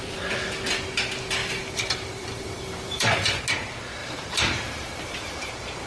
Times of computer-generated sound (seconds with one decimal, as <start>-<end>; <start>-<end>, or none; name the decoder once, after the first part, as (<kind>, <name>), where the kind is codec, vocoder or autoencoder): 1.4-3.4 (vocoder, BigVGAN v2); 4.0-5.5